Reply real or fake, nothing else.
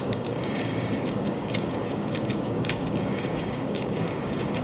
fake